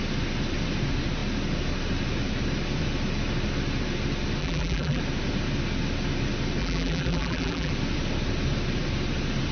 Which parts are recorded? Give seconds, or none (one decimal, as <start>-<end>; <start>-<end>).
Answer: 0.0-4.4; 5.0-6.6; 7.7-9.5